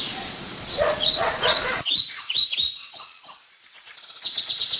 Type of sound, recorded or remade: remade